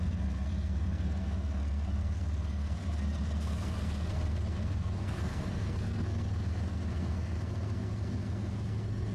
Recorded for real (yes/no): no